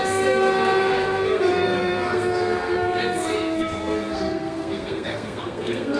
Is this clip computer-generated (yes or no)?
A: yes